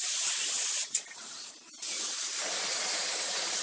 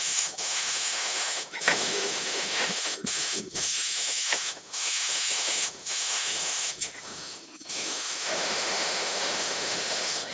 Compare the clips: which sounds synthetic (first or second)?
second